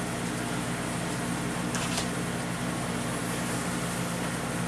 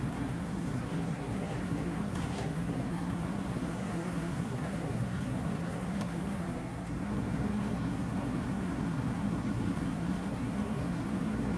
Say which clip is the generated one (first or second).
second